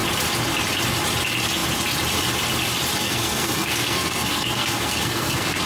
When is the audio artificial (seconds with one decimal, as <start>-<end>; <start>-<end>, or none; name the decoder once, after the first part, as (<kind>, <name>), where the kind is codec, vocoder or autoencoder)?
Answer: 3.0-5.7 (codec, SNAC)